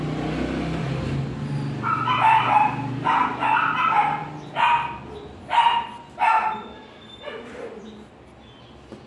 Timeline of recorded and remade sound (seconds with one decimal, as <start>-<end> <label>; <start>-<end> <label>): 0.0-9.1 recorded

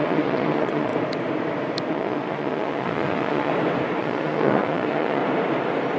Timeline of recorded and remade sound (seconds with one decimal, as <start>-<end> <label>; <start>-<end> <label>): 0.0-0.9 remade; 0.9-1.9 recorded; 1.9-3.5 remade; 3.5-4.0 recorded; 4.0-5.2 remade; 5.2-6.0 recorded

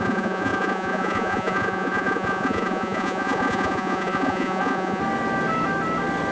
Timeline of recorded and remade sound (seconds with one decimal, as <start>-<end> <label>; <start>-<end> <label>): 0.0-5.0 remade; 5.0-6.3 recorded

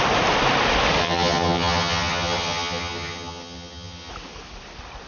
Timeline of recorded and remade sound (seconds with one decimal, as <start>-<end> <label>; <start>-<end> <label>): 0.0-1.0 recorded; 1.0-4.1 remade; 4.1-5.1 recorded

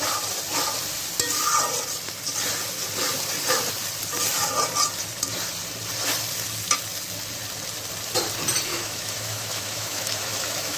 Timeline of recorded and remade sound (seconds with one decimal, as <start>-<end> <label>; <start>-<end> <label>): 0.0-8.7 recorded; 8.7-10.8 remade

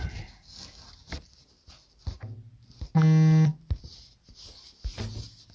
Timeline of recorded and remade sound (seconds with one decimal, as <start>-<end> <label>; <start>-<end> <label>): 0.0-5.5 recorded

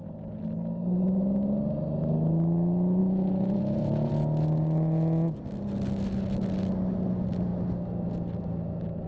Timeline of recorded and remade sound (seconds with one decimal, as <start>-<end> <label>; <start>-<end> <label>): 0.0-3.0 recorded; 3.0-4.1 remade; 4.1-9.1 recorded